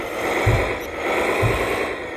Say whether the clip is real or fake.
real